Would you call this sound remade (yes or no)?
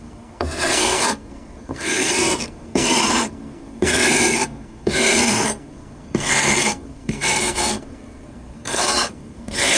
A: yes